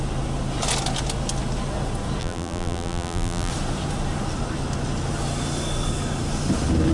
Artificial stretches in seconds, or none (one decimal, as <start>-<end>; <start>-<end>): 2.2-3.5